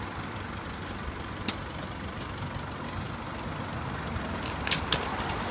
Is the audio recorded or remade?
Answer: recorded